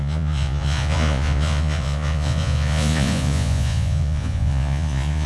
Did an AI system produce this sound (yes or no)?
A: yes